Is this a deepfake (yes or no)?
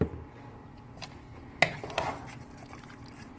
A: no